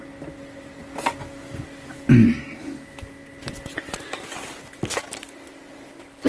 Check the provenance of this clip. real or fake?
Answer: real